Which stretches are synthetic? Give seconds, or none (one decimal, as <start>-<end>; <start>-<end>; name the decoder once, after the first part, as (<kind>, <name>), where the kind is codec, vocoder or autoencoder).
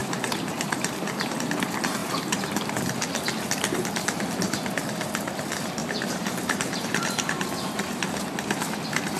0.0-1.5 (vocoder, BigVGAN v2); 2.0-2.7; 5.8-8.2